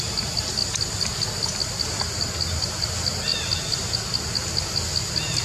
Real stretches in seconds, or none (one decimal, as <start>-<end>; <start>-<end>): 0.0-5.4